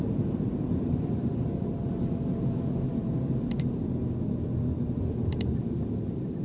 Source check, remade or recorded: recorded